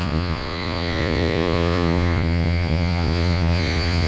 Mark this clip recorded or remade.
remade